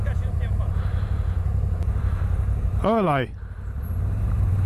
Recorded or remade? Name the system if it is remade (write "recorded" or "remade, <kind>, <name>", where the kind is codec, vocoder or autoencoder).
remade, vocoder, BigVGAN v2